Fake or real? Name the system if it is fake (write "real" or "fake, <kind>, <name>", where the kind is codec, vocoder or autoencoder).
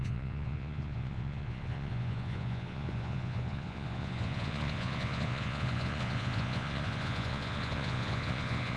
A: fake, vocoder, Vocos